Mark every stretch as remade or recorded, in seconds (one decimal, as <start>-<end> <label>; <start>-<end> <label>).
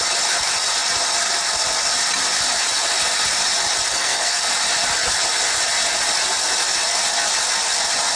0.0-3.9 recorded; 3.9-4.5 remade; 4.5-8.2 recorded